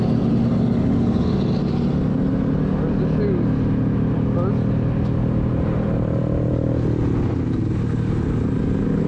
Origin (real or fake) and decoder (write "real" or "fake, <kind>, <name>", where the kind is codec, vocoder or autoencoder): real